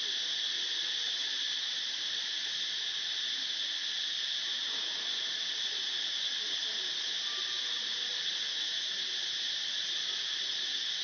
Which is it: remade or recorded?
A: recorded